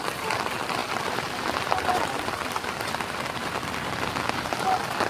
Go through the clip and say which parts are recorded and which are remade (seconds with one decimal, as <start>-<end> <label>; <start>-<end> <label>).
0.0-0.8 recorded; 0.8-3.9 remade; 3.9-5.1 recorded